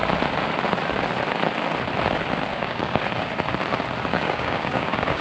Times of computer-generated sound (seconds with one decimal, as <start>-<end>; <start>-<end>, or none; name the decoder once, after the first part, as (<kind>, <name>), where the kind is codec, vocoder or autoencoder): 2.5-3.0 (codec, DAC); 4.1-5.2